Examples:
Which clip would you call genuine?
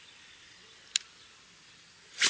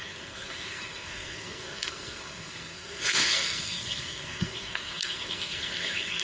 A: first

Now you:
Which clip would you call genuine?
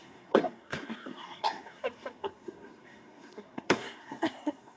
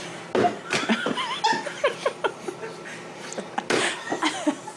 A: second